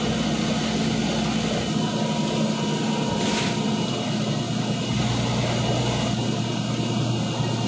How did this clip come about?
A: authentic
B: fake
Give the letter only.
A